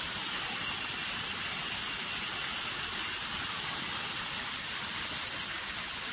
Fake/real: real